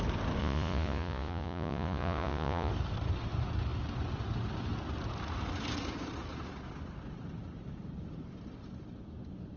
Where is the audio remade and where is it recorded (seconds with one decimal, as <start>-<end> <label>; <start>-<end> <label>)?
0.0-0.4 recorded; 0.4-2.7 remade; 2.7-9.6 recorded